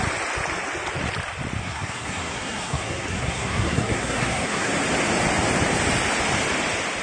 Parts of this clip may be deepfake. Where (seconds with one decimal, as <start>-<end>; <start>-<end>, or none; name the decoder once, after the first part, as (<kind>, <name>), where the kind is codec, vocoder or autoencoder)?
1.6-4.7 (codec, SNAC)